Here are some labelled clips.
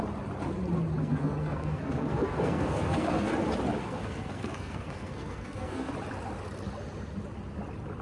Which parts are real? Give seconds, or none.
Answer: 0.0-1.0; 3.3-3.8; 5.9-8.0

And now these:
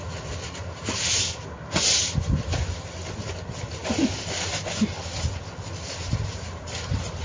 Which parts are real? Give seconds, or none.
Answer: 0.0-7.2